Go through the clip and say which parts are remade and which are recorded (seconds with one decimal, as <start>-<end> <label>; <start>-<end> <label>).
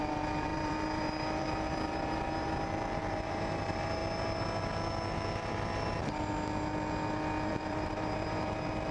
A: 0.0-4.0 remade; 4.0-7.5 recorded; 7.5-8.9 remade